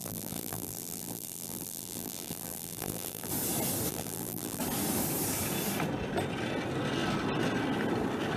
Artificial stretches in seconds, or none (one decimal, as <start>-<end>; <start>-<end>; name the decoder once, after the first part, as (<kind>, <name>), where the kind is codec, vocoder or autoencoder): 0.0-3.3 (vocoder, BigVGAN v2); 3.9-4.6